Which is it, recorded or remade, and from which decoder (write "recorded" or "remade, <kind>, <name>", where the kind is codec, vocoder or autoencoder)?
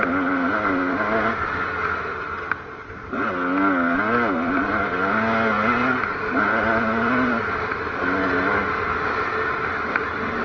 recorded